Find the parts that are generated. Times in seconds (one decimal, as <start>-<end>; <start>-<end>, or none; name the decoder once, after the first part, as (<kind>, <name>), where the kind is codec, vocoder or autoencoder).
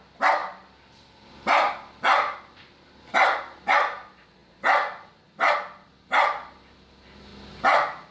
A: 0.4-2.0 (vocoder, BigVGAN v2)